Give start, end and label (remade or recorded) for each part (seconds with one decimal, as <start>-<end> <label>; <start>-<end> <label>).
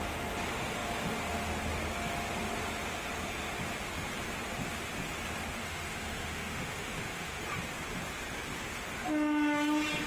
0.0-5.6 recorded; 5.6-7.4 remade; 7.4-10.1 recorded